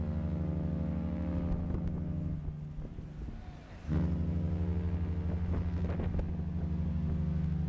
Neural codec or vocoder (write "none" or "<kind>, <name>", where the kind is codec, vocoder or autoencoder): none